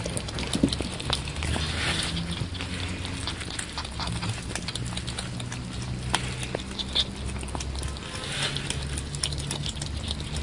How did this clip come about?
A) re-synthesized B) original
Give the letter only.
B